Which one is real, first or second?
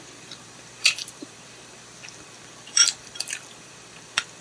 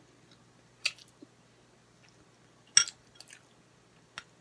second